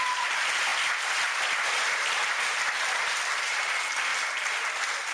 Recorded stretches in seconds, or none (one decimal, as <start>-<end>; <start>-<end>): 0.7-1.9; 4.1-5.1